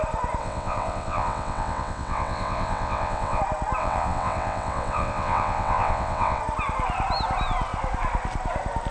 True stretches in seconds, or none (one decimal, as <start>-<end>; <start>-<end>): 0.0-0.4; 3.4-3.8; 6.4-8.9